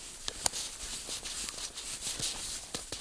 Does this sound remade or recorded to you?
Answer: recorded